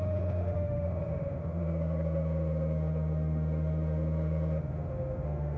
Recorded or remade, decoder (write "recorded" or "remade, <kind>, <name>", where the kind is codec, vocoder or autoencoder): remade, autoencoder, DAC-VAE